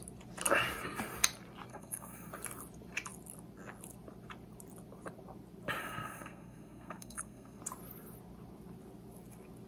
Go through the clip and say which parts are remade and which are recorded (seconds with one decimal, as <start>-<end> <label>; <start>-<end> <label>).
0.0-1.7 recorded; 1.7-2.3 remade; 2.3-5.8 recorded; 5.8-7.6 remade; 7.6-9.7 recorded